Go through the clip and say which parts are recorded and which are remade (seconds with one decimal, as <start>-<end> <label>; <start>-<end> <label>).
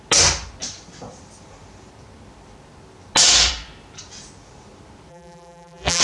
0.0-5.1 recorded; 5.1-6.0 remade